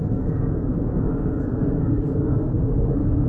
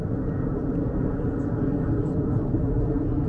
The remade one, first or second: first